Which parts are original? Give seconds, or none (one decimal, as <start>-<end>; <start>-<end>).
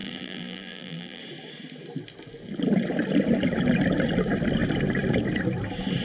1.2-6.0